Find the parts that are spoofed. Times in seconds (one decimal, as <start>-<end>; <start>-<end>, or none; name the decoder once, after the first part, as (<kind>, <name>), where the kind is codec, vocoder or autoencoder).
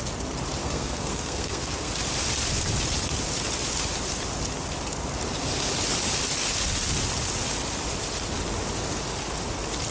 0.6-1.9 (codec, SNAC)